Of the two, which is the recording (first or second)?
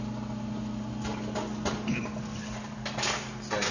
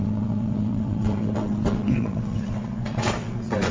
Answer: first